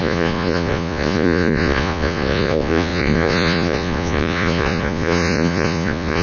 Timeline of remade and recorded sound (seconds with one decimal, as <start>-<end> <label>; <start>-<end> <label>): 0.0-6.2 remade

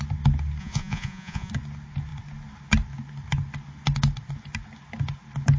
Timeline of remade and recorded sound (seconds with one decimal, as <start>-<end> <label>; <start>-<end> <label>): 0.0-0.6 recorded; 0.6-1.5 remade; 1.5-5.6 recorded

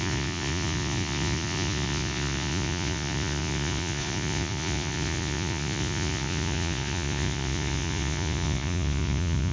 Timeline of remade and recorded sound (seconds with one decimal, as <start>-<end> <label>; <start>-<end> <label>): 0.0-9.5 remade

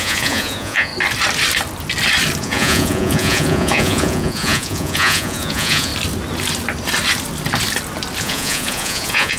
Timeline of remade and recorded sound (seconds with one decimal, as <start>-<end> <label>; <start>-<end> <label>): 0.0-0.9 remade; 0.9-2.4 recorded; 2.4-5.9 remade; 5.9-8.2 recorded; 8.2-9.4 remade

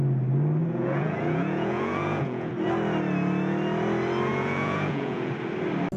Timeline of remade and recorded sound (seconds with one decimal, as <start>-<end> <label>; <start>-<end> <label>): 0.0-0.6 recorded; 0.6-2.5 remade; 2.5-4.3 recorded; 4.3-5.3 remade; 5.3-6.0 recorded